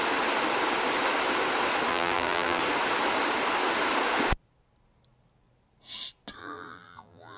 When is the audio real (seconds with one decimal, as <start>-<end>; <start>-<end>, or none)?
0.0-1.9; 2.6-6.4